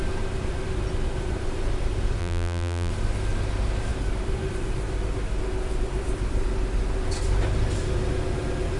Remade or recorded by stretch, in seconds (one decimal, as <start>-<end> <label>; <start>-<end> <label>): 0.0-2.2 recorded; 2.2-2.9 remade; 2.9-8.8 recorded